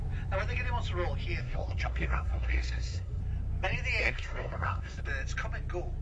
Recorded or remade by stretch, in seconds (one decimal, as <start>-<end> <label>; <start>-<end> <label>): 0.0-1.4 recorded; 1.4-3.2 remade; 3.2-4.0 recorded; 4.0-5.0 remade; 5.0-6.0 recorded